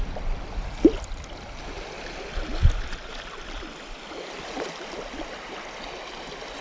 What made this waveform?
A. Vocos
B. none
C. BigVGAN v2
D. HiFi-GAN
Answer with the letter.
B